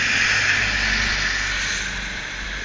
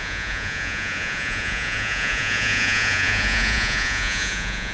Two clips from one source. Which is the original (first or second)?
first